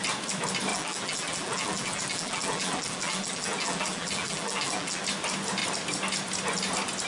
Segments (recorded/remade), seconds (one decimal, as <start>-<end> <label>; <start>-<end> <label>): 0.0-0.7 recorded; 0.7-5.0 remade; 5.0-7.1 recorded